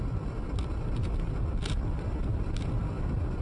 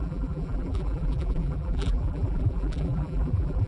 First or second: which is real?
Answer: first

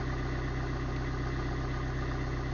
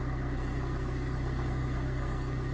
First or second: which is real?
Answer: first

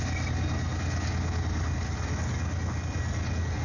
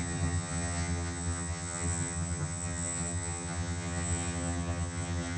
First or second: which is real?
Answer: first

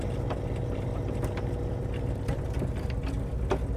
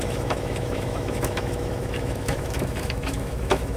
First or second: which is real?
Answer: first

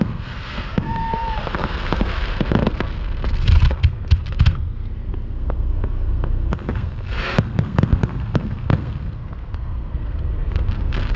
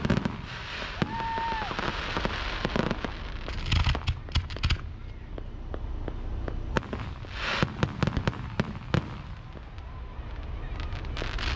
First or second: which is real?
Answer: second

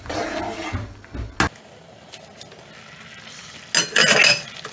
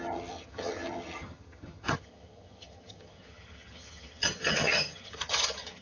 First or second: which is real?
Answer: first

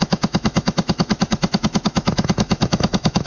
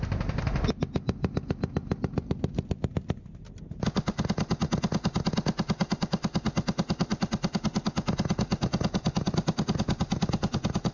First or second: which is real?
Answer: second